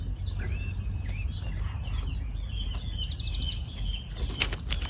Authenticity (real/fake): real